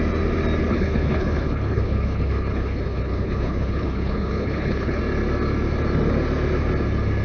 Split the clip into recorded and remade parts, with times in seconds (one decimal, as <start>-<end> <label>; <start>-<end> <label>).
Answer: 0.0-0.7 recorded; 0.7-5.0 remade; 5.0-7.2 recorded